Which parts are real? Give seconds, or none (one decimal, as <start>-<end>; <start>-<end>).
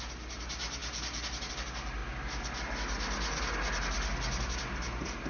0.0-5.3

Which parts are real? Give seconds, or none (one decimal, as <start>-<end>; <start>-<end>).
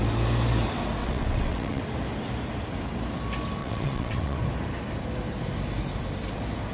0.0-1.0; 1.8-3.6; 4.4-6.7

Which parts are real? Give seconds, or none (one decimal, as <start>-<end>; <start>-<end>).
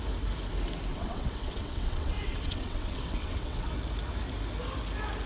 0.0-0.9; 3.7-5.3